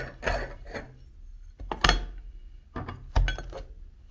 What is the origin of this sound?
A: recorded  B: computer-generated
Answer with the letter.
A